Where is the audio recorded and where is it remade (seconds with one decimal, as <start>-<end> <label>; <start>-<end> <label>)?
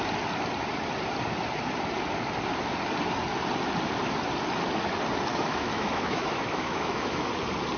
0.0-5.3 recorded; 5.3-7.3 remade; 7.3-7.8 recorded